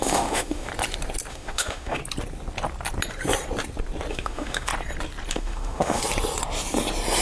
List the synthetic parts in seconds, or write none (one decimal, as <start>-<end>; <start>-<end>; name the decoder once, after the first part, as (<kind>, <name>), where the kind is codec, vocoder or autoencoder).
0.0-0.7 (autoencoder, DAC-VAE); 1.3-2.0; 4.1-4.7; 5.3-6.0